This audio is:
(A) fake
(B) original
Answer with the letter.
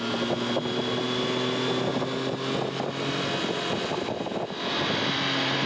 B